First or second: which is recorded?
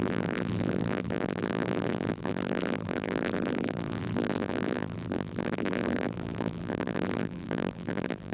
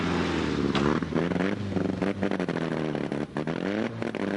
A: second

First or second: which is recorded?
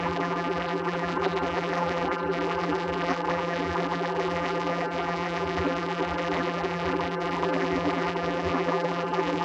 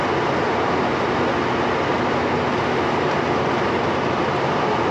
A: second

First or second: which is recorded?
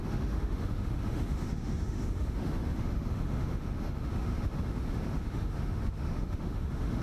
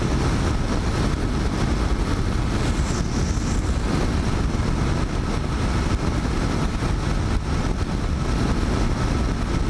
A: second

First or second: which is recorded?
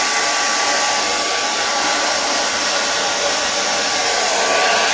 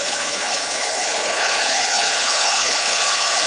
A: first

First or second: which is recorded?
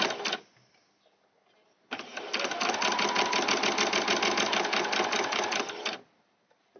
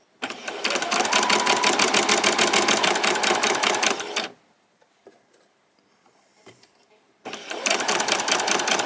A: first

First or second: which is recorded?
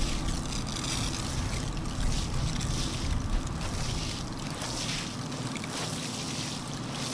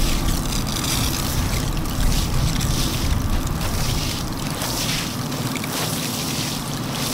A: first